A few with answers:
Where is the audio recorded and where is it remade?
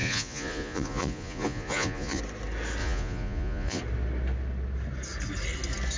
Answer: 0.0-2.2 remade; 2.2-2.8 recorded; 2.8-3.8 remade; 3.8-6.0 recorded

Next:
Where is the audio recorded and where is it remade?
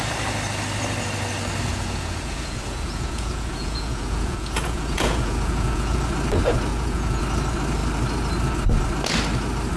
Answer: 0.0-1.7 recorded; 1.7-6.0 remade; 6.0-6.7 recorded; 6.7-7.2 remade; 7.2-9.8 recorded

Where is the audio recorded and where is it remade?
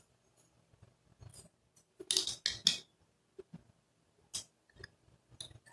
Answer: 0.0-5.7 recorded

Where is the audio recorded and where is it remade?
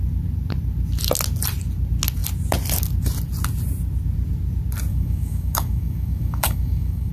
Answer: 0.0-4.9 recorded; 4.9-7.1 remade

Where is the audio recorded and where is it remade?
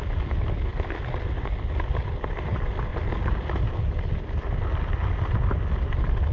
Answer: 0.0-0.7 recorded; 0.7-2.5 remade; 2.5-2.9 recorded; 2.9-3.6 remade; 3.6-6.3 recorded